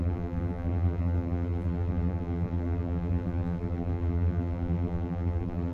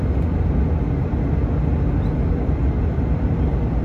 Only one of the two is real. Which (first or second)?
second